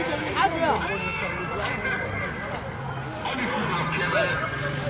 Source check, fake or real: real